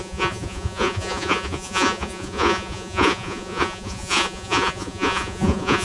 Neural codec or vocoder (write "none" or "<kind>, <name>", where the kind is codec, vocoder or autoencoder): vocoder, Vocos